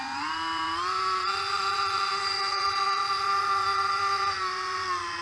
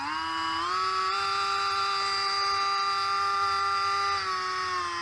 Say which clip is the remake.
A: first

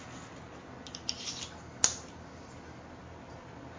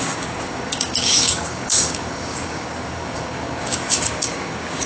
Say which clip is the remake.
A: second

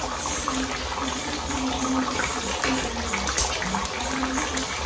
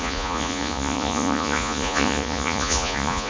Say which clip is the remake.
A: second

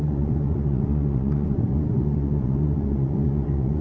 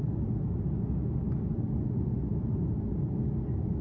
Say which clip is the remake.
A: first